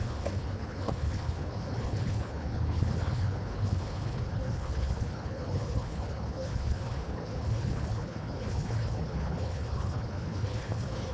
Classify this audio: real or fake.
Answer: fake